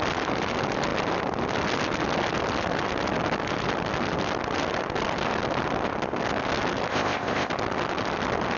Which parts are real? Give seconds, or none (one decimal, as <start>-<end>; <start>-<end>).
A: 0.0-6.9; 7.5-8.6